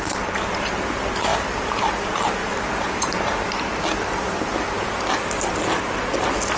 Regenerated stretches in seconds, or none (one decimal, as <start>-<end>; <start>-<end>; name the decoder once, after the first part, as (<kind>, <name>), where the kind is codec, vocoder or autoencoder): 1.3-1.8 (vocoder, BigVGAN v2)